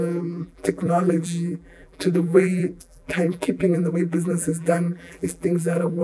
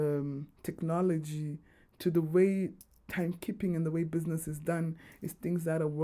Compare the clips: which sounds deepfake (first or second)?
first